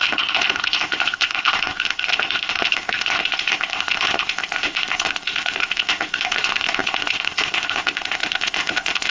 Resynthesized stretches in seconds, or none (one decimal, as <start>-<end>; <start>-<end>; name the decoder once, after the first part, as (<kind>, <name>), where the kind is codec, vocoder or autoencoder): 0.0-9.1 (codec, ZipCodec)